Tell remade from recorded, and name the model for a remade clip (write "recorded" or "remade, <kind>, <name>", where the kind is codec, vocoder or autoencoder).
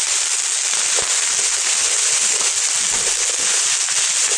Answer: recorded